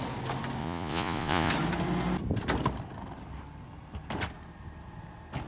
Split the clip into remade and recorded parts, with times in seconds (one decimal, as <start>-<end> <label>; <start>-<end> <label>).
0.0-0.6 recorded; 0.6-1.5 remade; 1.5-5.5 recorded